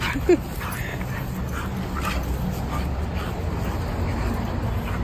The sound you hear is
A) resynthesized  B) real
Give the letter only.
B